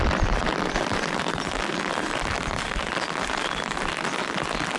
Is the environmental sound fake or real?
real